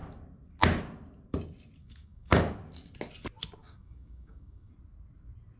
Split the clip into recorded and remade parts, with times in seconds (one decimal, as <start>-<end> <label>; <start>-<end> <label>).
0.0-1.8 recorded; 1.8-2.4 remade; 2.4-3.6 recorded; 3.6-4.7 remade; 4.7-5.6 recorded